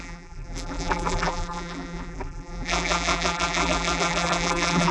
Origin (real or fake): fake